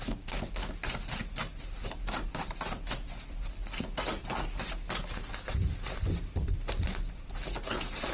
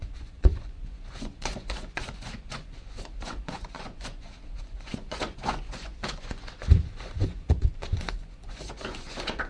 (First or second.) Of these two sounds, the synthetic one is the second